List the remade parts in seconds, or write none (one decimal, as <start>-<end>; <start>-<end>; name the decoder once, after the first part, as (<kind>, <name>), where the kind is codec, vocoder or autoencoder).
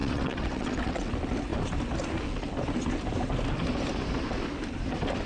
0.0-1.1 (vocoder, WaveNeXt)